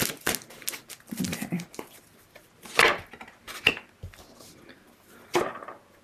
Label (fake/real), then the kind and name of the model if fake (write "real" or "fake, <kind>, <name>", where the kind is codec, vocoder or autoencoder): real